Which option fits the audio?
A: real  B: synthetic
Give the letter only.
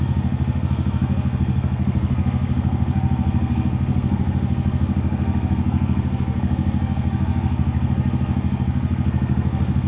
B